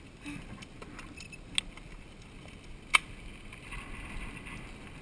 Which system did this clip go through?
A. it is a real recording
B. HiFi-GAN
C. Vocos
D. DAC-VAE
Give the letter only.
A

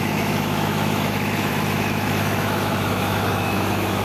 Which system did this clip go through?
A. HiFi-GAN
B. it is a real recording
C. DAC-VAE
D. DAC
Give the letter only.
C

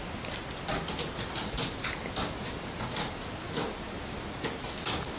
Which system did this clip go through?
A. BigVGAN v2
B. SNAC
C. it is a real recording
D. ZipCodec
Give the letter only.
C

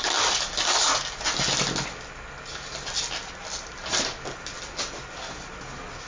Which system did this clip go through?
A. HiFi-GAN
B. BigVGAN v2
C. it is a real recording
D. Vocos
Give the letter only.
C